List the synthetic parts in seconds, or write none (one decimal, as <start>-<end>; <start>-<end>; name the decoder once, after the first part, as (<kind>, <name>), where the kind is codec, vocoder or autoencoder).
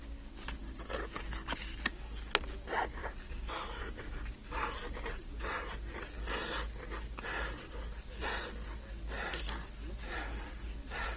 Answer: 3.0-5.3 (vocoder, BigVGAN v2)